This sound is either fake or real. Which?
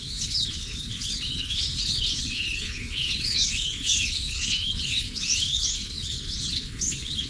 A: fake